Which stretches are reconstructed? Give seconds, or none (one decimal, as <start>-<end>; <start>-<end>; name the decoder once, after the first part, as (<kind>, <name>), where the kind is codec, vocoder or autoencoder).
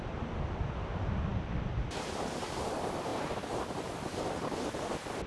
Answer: none